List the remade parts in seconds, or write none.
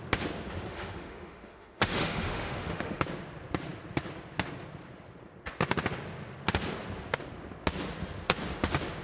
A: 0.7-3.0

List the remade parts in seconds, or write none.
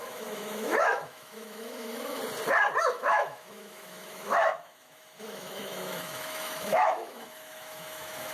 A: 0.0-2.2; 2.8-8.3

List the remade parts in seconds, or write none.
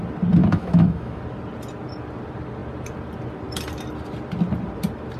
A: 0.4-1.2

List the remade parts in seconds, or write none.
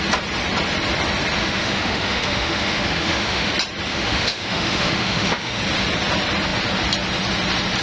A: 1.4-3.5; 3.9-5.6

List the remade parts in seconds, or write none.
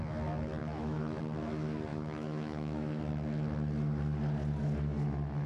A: 0.6-1.2; 1.9-3.0